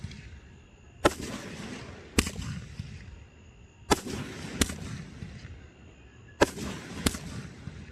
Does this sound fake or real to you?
real